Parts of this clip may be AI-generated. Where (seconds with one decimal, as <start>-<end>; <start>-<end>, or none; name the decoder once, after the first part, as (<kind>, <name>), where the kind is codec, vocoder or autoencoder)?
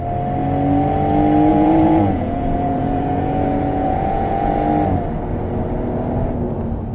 1.5-4.5 (vocoder, Vocos)